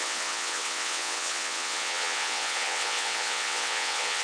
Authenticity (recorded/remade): remade